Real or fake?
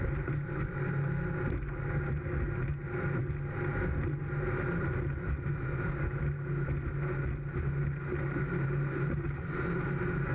real